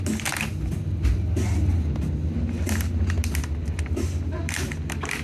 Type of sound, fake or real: real